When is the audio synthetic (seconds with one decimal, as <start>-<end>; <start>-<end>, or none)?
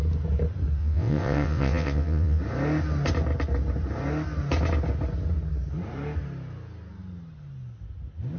0.8-2.4